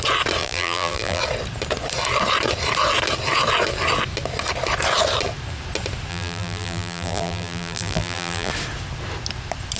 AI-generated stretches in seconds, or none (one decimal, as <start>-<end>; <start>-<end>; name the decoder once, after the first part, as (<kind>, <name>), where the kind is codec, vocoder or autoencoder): 0.4-1.2 (vocoder, BigVGAN v2); 6.1-8.5